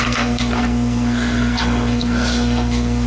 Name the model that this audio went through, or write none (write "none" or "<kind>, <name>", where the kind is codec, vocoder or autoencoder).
codec, SNAC